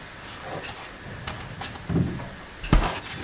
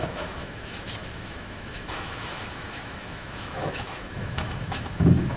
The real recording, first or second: first